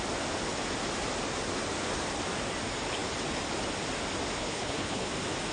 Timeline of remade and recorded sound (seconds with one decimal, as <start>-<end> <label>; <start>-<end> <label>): 0.0-4.4 recorded; 4.4-5.1 remade; 5.1-5.5 recorded